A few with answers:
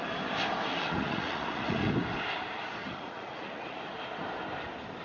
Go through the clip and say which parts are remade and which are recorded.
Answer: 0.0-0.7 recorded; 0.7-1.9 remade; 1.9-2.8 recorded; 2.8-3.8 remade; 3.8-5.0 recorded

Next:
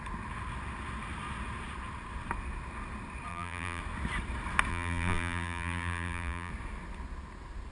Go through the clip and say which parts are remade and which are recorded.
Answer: 0.0-3.3 recorded; 3.3-3.8 remade; 3.8-4.7 recorded; 4.7-6.5 remade; 6.5-7.7 recorded